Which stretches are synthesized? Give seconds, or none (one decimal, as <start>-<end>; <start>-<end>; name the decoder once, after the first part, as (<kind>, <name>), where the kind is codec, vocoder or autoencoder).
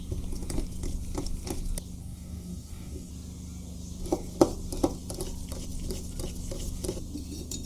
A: 2.0-3.1 (codec, DAC)